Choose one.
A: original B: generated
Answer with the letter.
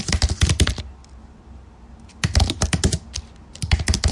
A